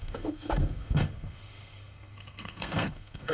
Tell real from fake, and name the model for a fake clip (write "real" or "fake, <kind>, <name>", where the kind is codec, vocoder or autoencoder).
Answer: fake, codec, SNAC